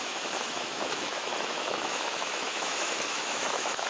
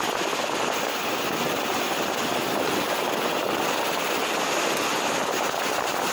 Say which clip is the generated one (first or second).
first